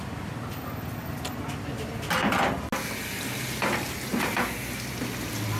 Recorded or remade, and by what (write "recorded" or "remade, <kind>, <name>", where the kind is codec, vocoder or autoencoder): recorded